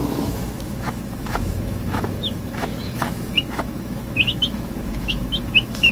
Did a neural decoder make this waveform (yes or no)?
yes